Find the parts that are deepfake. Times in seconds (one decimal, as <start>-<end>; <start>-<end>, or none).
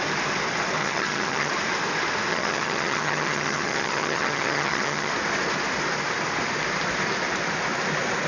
0.8-1.5; 2.3-5.1